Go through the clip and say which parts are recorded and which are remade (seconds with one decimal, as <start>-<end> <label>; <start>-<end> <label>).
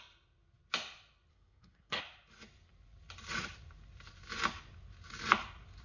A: 0.0-1.3 recorded; 1.3-2.0 remade; 2.0-5.8 recorded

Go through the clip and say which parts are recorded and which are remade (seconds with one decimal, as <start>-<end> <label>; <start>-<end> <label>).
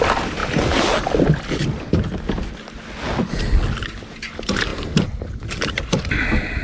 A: 0.0-6.6 recorded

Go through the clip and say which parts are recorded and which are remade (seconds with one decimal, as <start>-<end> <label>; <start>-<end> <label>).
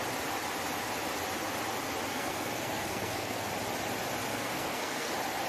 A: 0.0-2.1 recorded; 2.1-3.5 remade; 3.5-4.3 recorded; 4.3-5.1 remade; 5.1-5.5 recorded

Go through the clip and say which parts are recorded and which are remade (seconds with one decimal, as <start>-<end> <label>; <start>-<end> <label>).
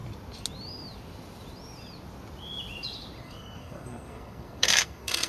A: 0.0-3.2 recorded; 3.2-5.3 remade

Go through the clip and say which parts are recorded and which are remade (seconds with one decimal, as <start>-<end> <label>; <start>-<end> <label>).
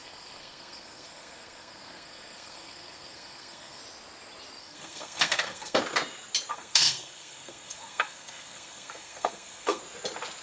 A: 0.0-3.8 remade; 3.8-4.6 recorded; 4.6-5.8 remade; 5.8-6.5 recorded; 6.5-9.8 remade; 9.8-10.4 recorded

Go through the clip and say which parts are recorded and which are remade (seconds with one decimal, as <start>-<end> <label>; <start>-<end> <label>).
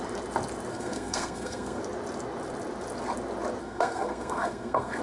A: 0.0-0.7 recorded; 0.7-1.8 remade; 1.8-3.6 recorded; 3.6-5.0 remade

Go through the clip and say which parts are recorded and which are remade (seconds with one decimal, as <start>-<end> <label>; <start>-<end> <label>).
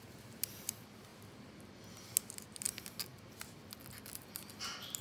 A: 0.0-5.0 recorded